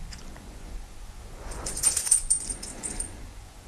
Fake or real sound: fake